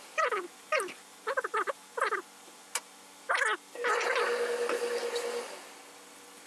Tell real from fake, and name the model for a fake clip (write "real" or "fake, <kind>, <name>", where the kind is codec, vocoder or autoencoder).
real